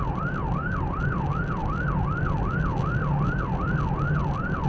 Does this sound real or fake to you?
real